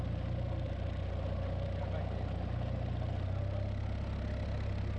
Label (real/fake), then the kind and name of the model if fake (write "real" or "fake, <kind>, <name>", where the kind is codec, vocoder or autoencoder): real